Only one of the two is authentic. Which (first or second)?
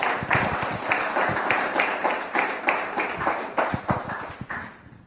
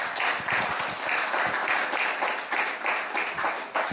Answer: second